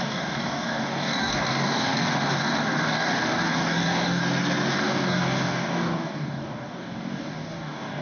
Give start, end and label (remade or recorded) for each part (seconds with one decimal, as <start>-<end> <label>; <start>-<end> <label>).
0.0-4.2 remade; 4.2-4.7 recorded; 4.7-8.0 remade